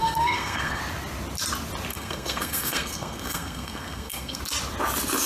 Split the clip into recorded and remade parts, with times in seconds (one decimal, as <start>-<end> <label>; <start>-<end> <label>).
0.0-0.8 remade; 0.8-1.9 recorded; 1.9-4.4 remade; 4.4-5.3 recorded